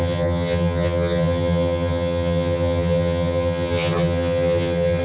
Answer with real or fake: fake